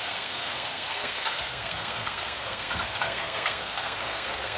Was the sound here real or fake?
fake